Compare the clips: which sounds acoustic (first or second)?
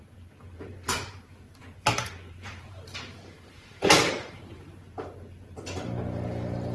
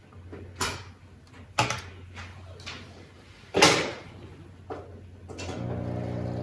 second